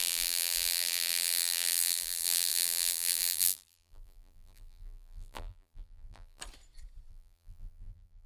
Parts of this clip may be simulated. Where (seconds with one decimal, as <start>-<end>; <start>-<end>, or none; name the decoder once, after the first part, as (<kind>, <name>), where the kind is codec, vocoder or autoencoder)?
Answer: 0.0-6.4 (vocoder, BigVGAN v2); 7.1-8.3